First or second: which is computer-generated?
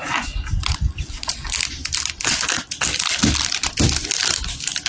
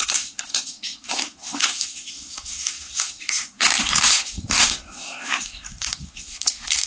second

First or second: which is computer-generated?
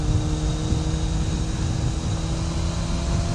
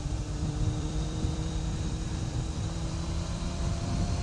second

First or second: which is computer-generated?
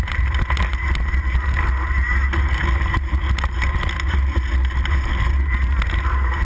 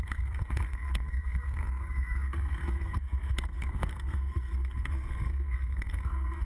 second